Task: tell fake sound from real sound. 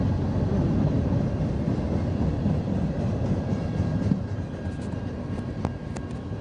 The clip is real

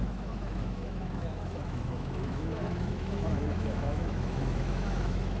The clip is fake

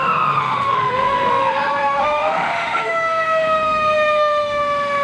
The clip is fake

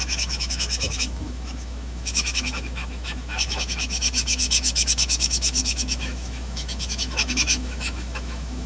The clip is fake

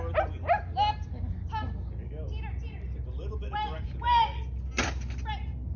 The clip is real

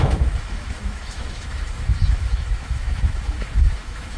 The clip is fake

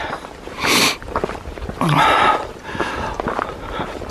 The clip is real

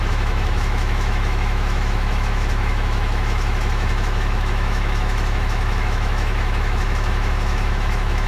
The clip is fake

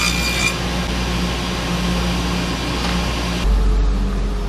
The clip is real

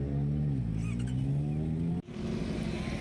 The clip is real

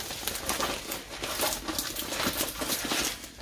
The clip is real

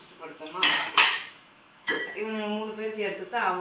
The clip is fake